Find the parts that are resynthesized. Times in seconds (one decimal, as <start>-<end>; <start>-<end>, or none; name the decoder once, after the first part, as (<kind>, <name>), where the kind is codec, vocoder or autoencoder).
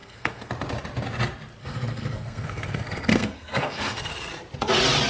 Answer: 0.0-0.5 (codec, SNAC); 1.6-4.1